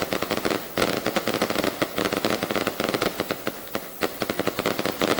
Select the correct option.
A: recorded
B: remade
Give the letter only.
A